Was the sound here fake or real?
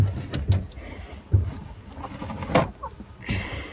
real